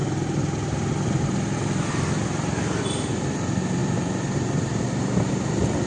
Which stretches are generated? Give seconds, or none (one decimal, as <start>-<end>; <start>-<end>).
2.8-5.9